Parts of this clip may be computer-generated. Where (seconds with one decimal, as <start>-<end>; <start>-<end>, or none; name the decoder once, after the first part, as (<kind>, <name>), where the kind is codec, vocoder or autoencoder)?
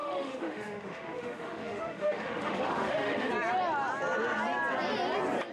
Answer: 0.0-3.3 (autoencoder, DAC-VAE)